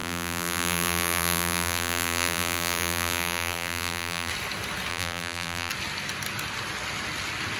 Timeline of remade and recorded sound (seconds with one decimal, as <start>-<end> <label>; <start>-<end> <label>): 0.0-4.3 remade; 4.3-4.9 recorded; 4.9-5.7 remade; 5.7-7.6 recorded